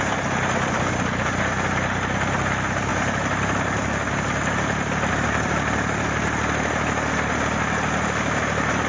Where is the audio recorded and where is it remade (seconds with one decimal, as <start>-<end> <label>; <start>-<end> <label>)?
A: 0.0-8.9 recorded